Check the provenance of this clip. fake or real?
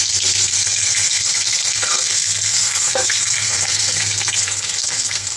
fake